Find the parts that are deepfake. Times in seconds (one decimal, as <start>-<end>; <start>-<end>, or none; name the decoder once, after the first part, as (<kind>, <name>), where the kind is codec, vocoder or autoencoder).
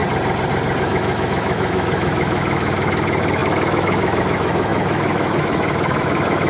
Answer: 0.8-6.5 (autoencoder, DAC-VAE)